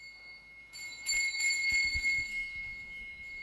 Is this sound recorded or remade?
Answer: remade